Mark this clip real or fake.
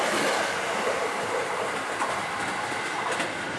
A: real